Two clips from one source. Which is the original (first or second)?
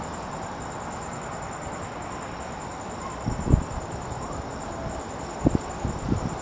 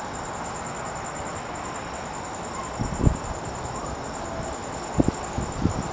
second